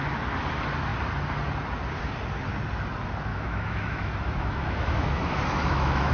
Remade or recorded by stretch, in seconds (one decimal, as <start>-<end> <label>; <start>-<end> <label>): 0.0-3.3 recorded; 3.3-6.1 remade